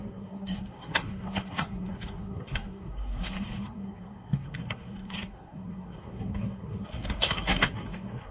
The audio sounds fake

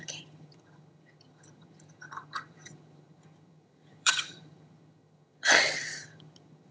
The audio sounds fake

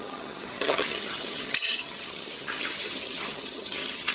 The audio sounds fake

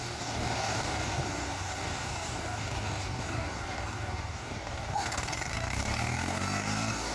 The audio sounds fake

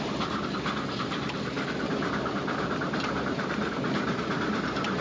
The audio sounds real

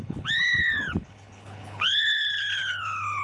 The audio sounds fake